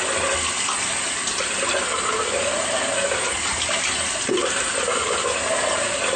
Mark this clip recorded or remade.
recorded